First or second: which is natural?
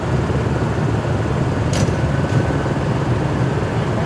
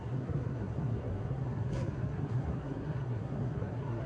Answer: first